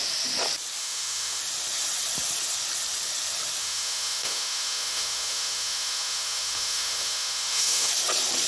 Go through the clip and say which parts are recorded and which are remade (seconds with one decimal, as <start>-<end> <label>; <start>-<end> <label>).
0.0-0.8 recorded; 0.8-1.4 remade; 1.4-3.6 recorded; 3.6-7.9 remade; 7.9-8.5 recorded